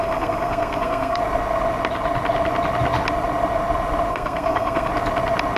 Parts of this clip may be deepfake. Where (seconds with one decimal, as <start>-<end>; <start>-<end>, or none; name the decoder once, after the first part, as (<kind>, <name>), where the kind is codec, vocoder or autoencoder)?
0.0-1.2 (codec, SNAC); 4.1-4.9

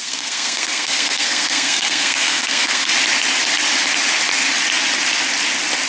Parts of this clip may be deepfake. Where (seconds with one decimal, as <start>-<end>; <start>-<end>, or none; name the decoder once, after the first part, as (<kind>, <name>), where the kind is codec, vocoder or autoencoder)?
0.0-2.9 (codec, SNAC)

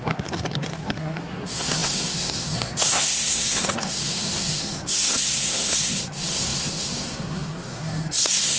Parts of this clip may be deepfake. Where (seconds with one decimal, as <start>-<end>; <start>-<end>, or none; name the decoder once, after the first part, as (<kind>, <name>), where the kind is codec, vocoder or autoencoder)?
0.0-8.6 (codec, SNAC)